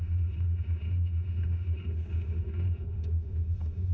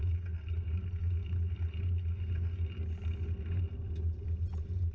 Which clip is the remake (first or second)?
first